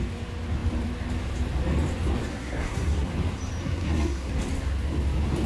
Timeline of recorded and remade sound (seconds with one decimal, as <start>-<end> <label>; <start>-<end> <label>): 0.0-2.3 recorded; 2.3-3.1 remade; 3.1-3.6 recorded; 3.6-4.3 remade; 4.3-5.5 recorded